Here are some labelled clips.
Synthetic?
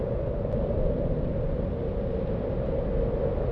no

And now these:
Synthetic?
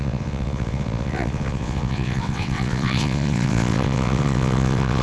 yes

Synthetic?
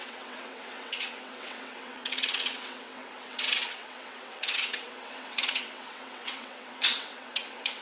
yes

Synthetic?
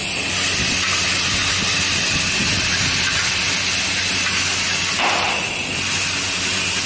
no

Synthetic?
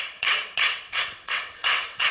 yes